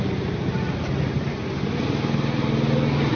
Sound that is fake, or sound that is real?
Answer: real